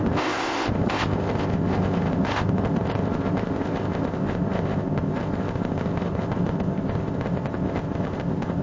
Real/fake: fake